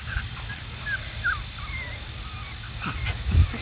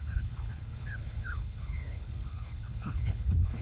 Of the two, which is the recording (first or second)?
first